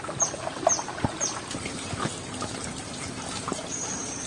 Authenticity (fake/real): real